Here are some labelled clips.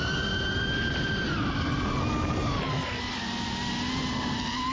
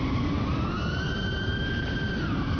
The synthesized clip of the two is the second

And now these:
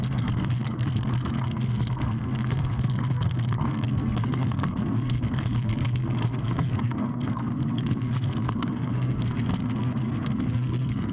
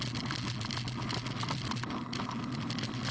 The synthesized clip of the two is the first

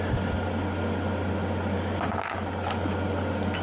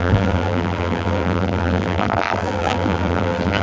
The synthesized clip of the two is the second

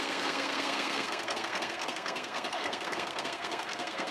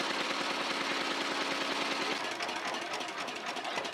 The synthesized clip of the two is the first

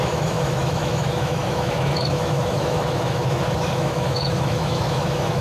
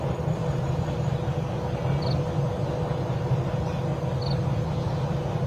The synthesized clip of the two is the first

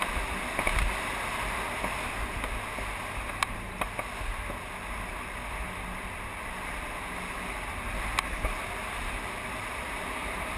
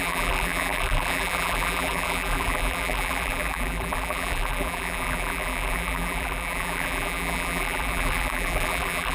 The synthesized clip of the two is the second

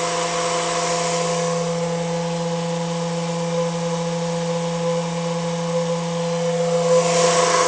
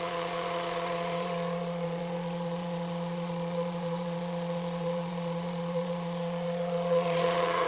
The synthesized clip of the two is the second